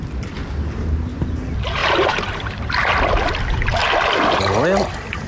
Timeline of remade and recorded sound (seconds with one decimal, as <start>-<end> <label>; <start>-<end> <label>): 0.0-1.8 recorded; 1.8-2.9 remade; 2.9-5.3 recorded